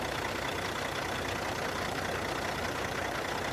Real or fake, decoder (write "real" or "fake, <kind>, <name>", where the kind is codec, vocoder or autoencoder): real